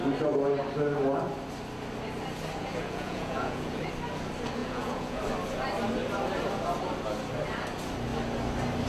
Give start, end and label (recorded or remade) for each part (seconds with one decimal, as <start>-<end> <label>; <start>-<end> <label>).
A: 0.0-2.6 recorded; 2.6-3.8 remade; 3.8-4.6 recorded; 4.6-5.2 remade; 5.2-8.9 recorded